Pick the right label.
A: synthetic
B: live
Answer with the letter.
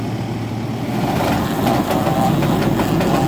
B